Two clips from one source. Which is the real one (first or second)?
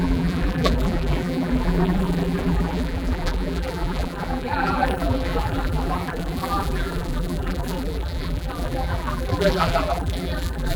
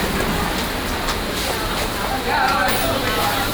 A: second